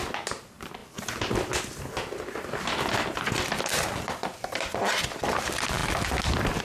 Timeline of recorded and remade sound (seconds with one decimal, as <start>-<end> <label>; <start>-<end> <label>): 0.0-6.6 recorded